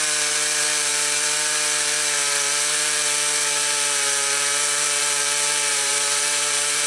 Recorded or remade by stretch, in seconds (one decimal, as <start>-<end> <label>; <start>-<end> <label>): 0.0-5.7 recorded; 5.7-6.9 remade